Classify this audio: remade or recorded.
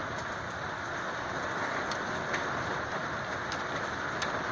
recorded